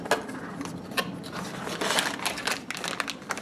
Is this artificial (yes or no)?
no